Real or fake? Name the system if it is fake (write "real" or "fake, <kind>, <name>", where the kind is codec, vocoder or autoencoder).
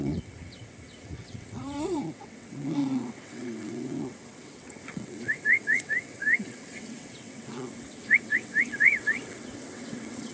fake, vocoder, WaveNeXt